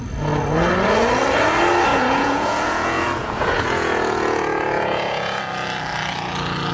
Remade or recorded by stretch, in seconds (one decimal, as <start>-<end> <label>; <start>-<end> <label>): 0.0-1.9 recorded; 1.9-5.4 remade; 5.4-6.7 recorded